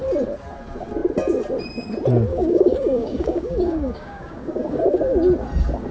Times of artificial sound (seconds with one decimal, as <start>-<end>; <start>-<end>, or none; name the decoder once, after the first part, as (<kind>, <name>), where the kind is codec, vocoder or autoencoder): 2.3-4.8 (codec, DAC)